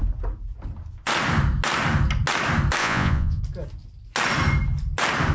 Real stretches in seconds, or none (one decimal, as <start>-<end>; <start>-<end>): 0.0-2.8; 3.4-5.3